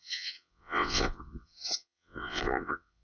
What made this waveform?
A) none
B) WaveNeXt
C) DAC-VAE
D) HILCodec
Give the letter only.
B